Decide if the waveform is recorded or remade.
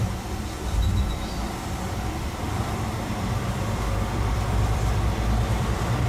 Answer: remade